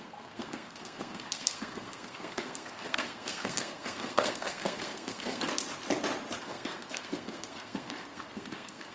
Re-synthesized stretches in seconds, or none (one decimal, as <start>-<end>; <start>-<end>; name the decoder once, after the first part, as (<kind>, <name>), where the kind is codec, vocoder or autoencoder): 0.0-5.5 (codec, SNAC); 6.4-8.9